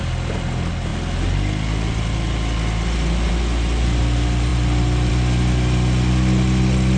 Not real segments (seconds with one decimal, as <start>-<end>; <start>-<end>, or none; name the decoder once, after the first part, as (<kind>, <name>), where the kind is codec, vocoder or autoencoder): none